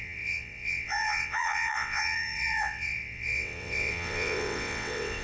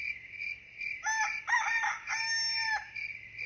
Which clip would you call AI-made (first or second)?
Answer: first